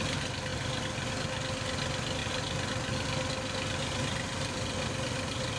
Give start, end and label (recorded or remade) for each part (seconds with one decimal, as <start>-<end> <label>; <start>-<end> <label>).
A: 0.0-5.6 recorded